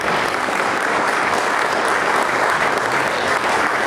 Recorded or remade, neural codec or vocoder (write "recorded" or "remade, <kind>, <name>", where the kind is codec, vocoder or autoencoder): remade, codec, DAC